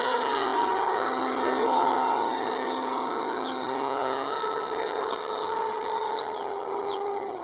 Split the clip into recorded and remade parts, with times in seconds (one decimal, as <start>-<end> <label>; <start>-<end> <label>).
0.0-7.4 remade